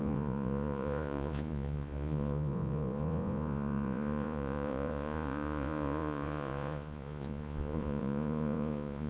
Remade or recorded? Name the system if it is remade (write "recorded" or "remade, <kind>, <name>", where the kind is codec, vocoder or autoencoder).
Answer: remade, vocoder, Vocos